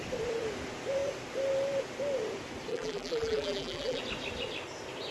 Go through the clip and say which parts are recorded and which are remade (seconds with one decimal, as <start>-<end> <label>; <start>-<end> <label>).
0.0-2.7 recorded; 2.7-4.0 remade; 4.0-5.1 recorded

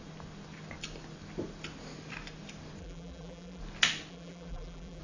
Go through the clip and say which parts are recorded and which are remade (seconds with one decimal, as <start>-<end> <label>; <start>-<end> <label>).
0.0-2.8 recorded; 2.8-3.6 remade; 3.6-4.1 recorded; 4.1-5.0 remade

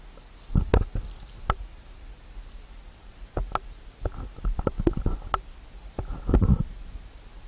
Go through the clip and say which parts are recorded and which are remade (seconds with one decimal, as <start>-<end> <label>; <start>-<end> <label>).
0.0-7.5 recorded

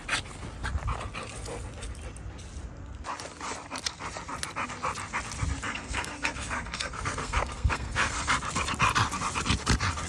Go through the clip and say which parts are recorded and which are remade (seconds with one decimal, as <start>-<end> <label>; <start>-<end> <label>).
0.0-5.7 recorded; 5.7-8.3 remade; 8.3-10.1 recorded

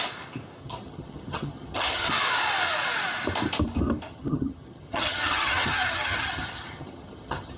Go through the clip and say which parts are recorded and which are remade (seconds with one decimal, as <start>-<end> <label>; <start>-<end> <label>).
0.0-0.6 recorded; 0.6-2.1 remade; 2.1-4.1 recorded; 4.1-7.6 remade

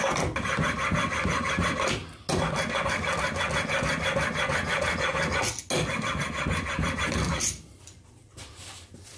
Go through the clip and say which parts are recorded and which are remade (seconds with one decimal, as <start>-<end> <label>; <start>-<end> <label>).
0.0-2.0 remade; 2.0-7.0 recorded; 7.0-9.2 remade

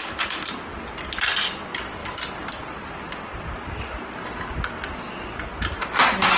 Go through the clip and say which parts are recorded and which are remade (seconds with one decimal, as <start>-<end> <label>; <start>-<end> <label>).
0.0-0.6 remade; 0.6-2.0 recorded; 2.0-3.2 remade; 3.2-6.4 recorded

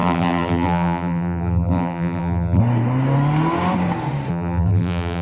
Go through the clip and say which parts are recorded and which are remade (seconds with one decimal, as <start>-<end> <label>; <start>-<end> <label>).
0.0-2.6 remade; 2.6-4.3 recorded; 4.3-5.2 remade